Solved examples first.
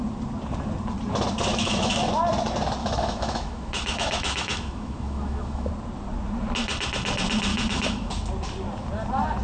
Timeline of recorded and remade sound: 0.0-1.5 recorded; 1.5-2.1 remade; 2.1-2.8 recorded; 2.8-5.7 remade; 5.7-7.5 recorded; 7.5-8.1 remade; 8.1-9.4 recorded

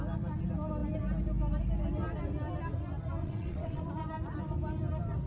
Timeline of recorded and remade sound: 0.0-3.2 recorded; 3.2-3.9 remade; 3.9-5.3 recorded